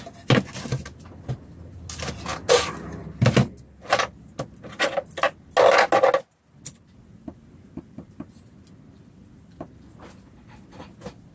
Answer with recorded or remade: recorded